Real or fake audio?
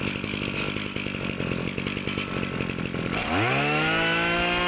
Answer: real